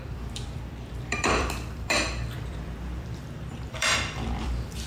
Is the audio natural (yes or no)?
no